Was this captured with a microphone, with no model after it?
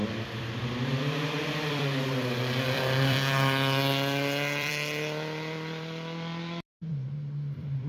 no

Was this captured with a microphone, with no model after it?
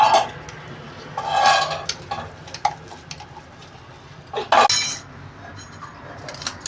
yes